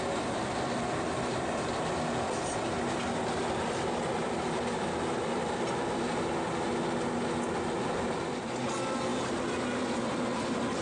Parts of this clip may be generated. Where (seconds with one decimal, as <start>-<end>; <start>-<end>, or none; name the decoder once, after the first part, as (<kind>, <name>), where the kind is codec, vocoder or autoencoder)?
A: none